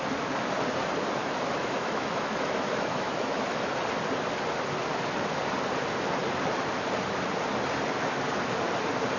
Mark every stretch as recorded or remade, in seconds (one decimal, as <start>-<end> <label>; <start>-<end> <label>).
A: 0.0-1.2 recorded; 1.2-3.7 remade; 3.7-9.2 recorded